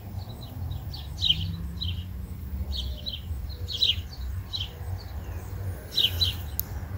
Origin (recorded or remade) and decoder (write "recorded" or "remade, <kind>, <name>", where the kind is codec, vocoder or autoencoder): recorded